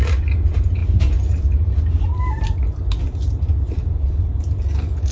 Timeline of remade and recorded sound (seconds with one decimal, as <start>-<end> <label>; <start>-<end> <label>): 0.0-5.1 recorded